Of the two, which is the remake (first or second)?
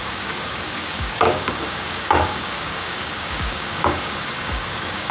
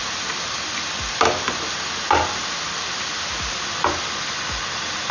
first